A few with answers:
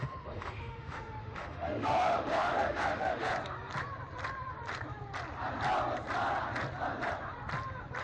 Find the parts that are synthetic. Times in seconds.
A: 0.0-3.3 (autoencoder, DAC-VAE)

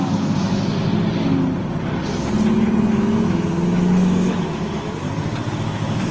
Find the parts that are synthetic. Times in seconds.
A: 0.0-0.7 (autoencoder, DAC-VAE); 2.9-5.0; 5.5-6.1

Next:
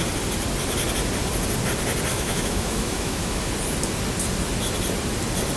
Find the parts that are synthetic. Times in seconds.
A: 2.1-3.5 (autoencoder, DAC-VAE)